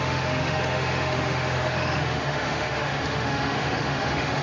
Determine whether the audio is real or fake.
fake